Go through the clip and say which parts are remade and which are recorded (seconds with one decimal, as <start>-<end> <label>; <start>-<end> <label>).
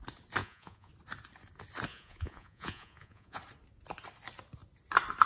0.0-0.4 recorded; 0.4-0.9 remade; 0.9-1.9 recorded; 1.9-3.4 remade; 3.4-5.3 recorded